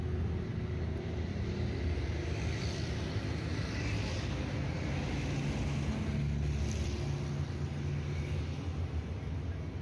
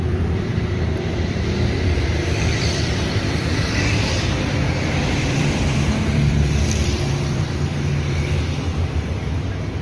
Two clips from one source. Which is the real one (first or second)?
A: first